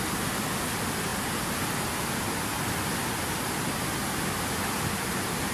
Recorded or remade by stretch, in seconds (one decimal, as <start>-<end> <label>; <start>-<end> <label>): 0.0-5.5 recorded